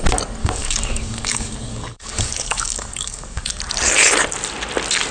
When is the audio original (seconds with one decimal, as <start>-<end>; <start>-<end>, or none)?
0.0-0.4; 3.5-5.1